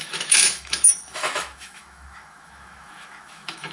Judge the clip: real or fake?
fake